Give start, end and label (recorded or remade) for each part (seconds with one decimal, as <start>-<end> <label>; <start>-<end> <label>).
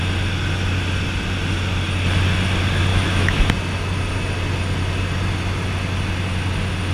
0.0-2.9 recorded; 2.9-3.4 remade; 3.4-6.9 recorded